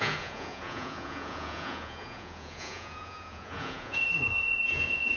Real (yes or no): no